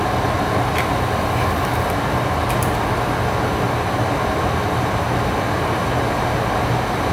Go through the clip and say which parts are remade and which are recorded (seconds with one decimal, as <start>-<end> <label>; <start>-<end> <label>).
0.0-5.8 recorded; 5.8-7.1 remade